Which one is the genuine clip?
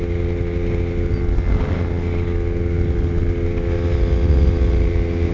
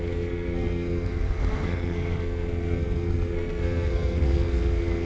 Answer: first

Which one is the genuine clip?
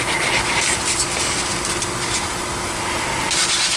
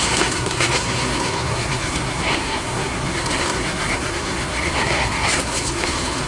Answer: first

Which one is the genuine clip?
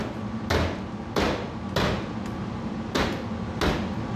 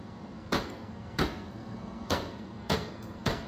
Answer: first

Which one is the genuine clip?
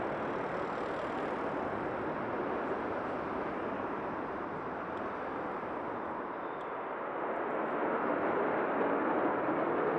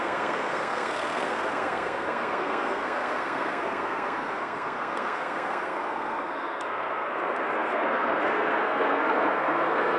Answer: first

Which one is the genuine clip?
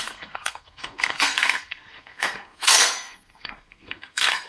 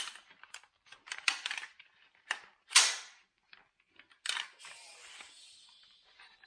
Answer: second